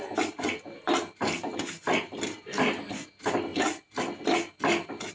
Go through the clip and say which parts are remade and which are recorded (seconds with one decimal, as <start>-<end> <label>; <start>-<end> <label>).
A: 0.0-5.1 recorded